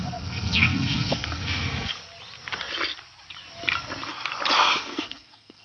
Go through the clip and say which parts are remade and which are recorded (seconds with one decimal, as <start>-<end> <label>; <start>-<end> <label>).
0.0-1.9 remade; 1.9-4.8 recorded; 4.8-5.6 remade

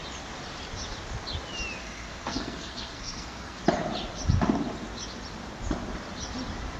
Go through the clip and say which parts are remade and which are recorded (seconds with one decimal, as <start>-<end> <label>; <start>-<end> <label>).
0.0-1.8 recorded; 1.8-3.6 remade; 3.6-6.8 recorded